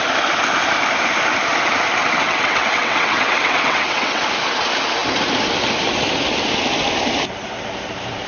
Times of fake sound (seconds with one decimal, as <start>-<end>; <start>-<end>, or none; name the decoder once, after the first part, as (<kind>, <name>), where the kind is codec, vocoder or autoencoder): 2.0-4.2 (vocoder, WaveNeXt)